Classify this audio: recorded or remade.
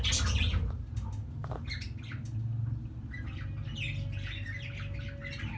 recorded